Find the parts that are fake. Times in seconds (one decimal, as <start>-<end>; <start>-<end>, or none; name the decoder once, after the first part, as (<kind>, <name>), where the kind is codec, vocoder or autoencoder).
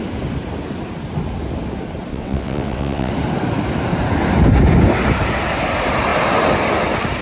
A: 2.1-3.1 (vocoder, WaveNeXt)